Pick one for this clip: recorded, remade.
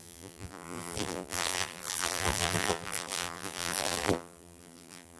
remade